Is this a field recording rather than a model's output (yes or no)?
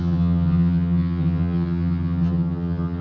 no